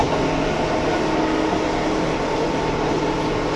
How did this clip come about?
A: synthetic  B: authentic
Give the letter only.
B